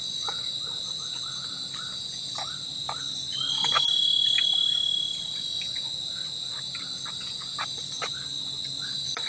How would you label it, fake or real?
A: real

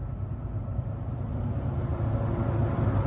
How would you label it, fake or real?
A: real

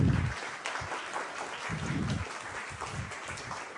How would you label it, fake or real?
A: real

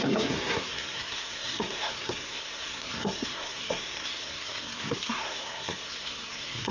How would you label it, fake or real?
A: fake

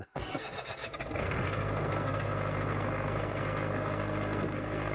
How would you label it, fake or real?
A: fake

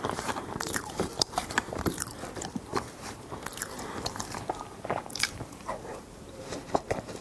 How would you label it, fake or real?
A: fake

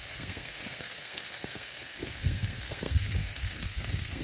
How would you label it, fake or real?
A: fake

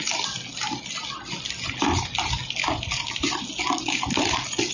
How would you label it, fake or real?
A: real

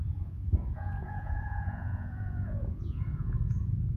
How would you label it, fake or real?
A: fake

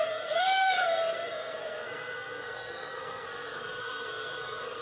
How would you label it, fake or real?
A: fake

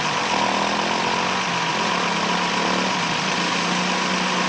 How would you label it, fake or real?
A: real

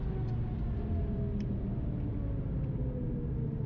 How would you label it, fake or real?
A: real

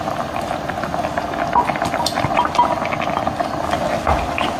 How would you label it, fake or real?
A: real